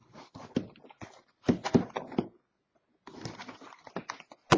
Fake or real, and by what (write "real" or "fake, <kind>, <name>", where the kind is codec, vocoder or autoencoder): real